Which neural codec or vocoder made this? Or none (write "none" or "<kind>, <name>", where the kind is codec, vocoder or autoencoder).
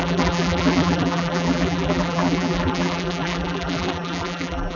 vocoder, BigVGAN v2